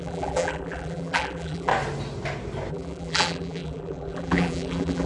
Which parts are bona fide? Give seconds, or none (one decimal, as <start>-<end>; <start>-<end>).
1.7-2.7